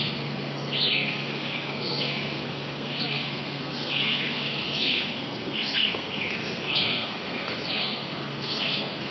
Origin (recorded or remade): remade